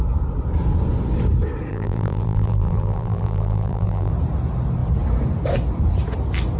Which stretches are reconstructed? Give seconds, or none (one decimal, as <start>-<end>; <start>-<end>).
1.7-4.1